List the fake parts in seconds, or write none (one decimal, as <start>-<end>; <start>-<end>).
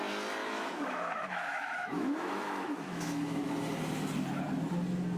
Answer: 0.4-3.5